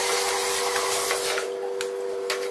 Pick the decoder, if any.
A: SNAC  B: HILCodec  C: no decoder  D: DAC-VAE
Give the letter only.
C